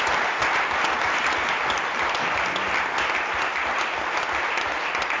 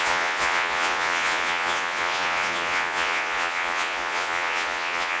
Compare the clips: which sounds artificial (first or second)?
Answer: second